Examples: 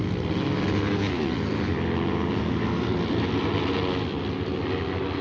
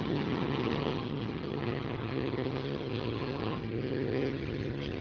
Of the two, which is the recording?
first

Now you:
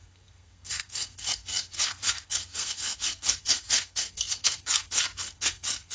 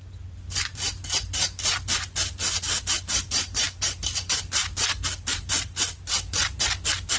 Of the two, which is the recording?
second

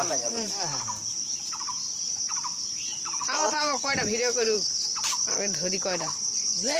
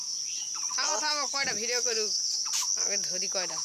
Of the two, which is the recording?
second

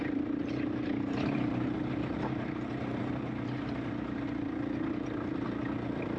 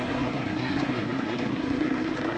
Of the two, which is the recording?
first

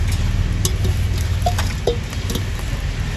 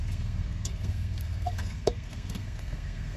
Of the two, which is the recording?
first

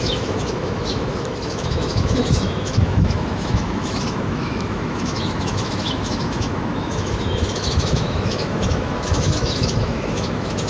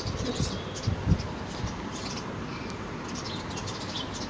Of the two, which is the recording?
second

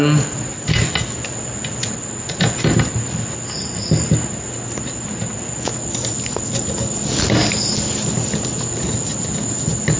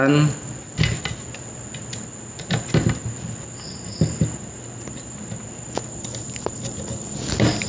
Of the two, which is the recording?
first